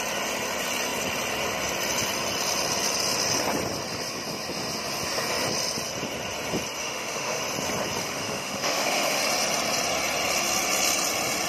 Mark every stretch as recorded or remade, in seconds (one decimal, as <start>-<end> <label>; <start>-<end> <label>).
0.0-6.8 recorded; 6.8-7.4 remade; 7.4-8.0 recorded; 8.0-9.2 remade; 9.2-11.5 recorded